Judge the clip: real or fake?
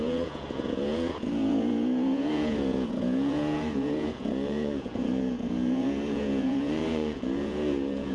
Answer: fake